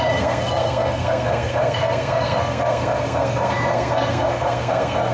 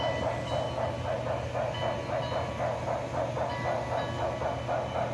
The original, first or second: second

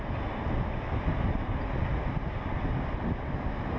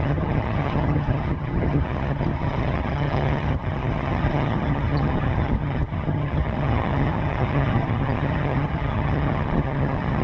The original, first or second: first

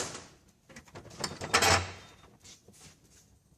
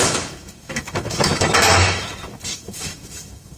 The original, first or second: first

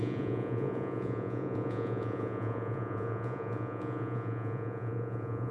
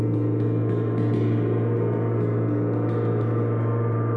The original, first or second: second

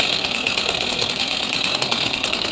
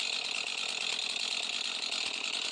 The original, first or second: second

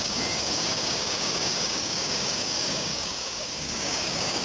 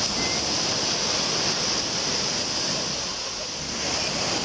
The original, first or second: second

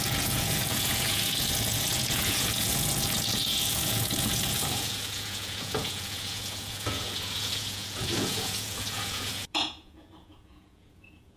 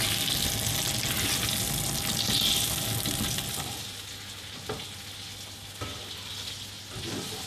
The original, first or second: second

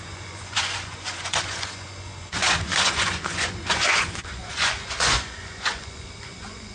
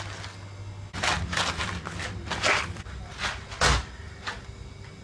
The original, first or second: second